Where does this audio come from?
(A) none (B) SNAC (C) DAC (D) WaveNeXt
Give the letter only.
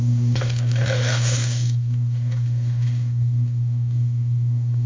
C